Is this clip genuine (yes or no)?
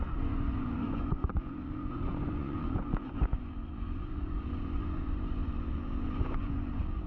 no